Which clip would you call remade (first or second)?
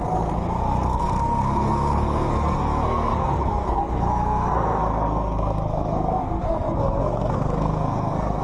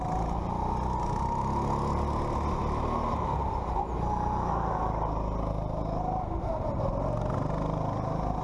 first